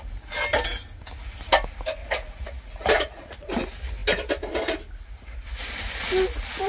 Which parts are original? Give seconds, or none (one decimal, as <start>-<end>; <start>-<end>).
0.0-2.0; 3.5-6.7